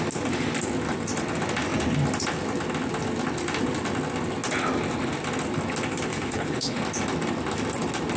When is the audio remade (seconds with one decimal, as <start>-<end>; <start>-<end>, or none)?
6.1-6.8